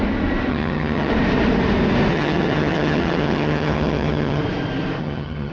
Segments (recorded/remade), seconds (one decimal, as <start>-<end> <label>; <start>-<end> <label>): 0.0-0.5 recorded; 0.5-1.1 remade; 1.1-2.1 recorded; 2.1-4.4 remade; 4.4-5.0 recorded; 5.0-5.5 remade